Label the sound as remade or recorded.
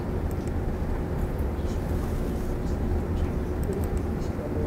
remade